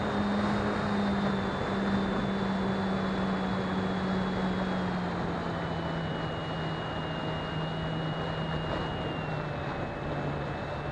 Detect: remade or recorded recorded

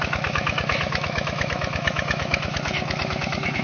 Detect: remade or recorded remade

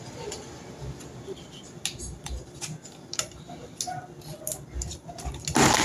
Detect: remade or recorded recorded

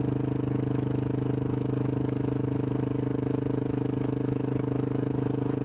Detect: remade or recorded remade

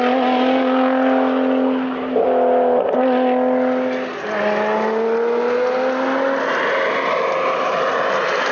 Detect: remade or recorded recorded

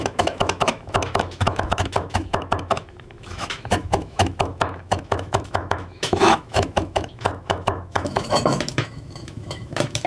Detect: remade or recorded remade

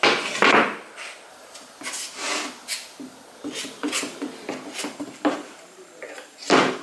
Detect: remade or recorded recorded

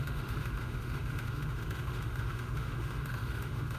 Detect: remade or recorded remade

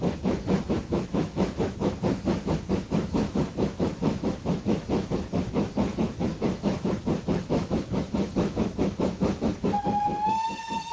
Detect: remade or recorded remade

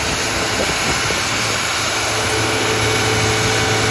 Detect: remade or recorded recorded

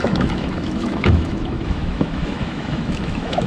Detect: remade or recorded remade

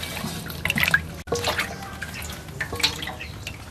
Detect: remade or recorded recorded